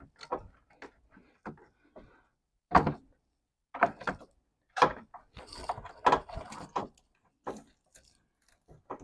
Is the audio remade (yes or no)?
no